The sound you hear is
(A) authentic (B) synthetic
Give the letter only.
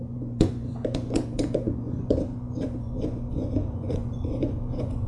B